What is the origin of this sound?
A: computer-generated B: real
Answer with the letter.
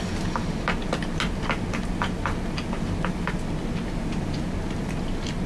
B